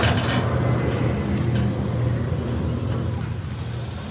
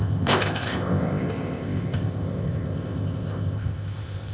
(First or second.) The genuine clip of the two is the first